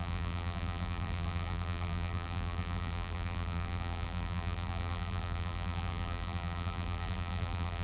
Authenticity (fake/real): fake